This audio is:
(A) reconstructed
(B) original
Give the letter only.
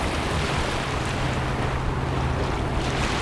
B